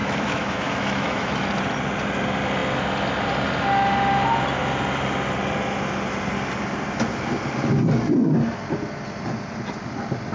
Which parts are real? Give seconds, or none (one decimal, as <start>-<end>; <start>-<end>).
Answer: 1.4-10.3